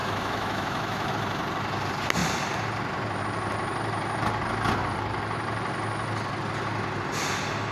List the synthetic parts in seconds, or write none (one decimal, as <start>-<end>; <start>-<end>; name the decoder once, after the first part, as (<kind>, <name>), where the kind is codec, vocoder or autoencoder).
0.0-1.1 (autoencoder, DAC-VAE)